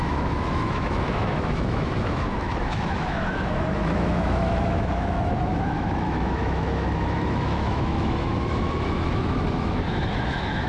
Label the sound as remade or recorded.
remade